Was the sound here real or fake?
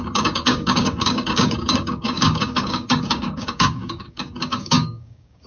fake